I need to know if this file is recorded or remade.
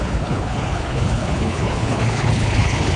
remade